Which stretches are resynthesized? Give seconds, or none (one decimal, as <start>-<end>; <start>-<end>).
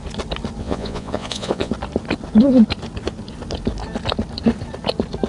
0.6-1.7